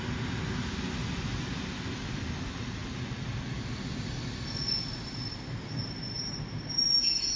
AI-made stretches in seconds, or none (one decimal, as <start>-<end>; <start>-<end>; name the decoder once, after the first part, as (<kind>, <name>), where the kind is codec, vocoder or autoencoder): none